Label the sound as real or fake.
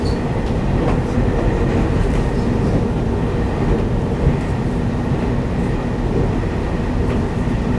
real